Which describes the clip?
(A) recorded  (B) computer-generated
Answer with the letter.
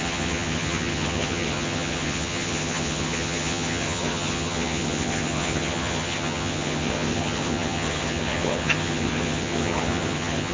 B